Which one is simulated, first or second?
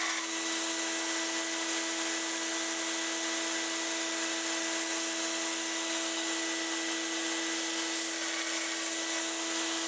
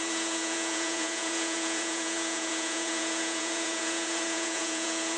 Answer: second